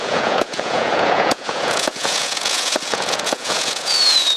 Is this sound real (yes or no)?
no